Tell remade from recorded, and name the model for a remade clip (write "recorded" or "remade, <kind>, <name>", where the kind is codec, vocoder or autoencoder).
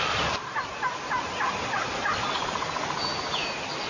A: recorded